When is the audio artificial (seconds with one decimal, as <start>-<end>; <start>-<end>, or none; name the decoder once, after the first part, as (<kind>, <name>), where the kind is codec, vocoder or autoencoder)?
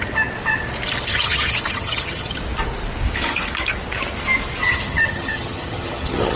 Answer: 1.1-2.4 (vocoder, HiFi-GAN); 4.6-6.4